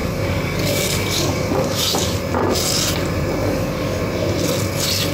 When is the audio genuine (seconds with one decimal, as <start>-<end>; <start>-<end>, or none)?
2.2-3.4; 4.0-5.1